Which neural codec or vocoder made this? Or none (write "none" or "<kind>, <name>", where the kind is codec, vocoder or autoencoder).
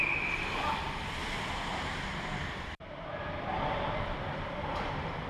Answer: vocoder, BigVGAN v2